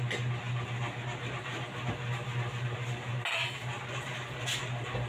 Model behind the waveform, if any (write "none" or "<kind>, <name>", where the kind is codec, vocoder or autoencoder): none